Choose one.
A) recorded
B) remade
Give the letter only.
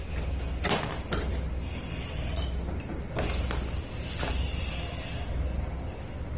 A